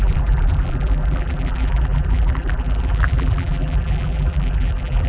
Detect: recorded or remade remade